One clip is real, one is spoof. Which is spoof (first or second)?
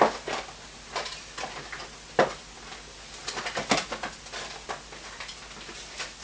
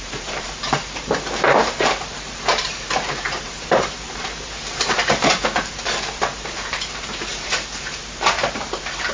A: second